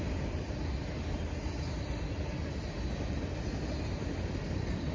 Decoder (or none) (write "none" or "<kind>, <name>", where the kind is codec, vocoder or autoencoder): none